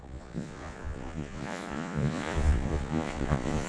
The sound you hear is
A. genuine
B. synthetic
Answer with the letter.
B